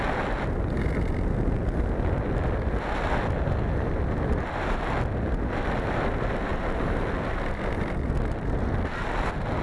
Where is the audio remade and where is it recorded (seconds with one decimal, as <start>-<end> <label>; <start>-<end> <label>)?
0.0-9.6 recorded